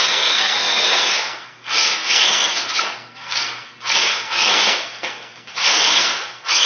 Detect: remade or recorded remade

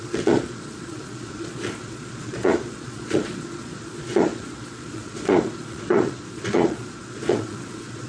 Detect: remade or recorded remade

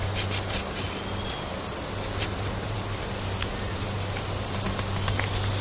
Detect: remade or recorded recorded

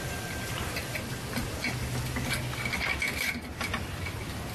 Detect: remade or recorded recorded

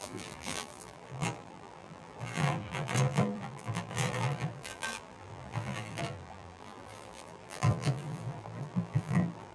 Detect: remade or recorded remade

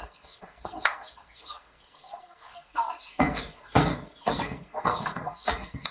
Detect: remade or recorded remade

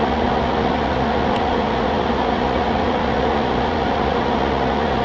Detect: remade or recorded remade